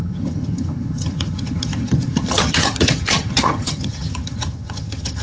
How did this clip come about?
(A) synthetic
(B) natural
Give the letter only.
A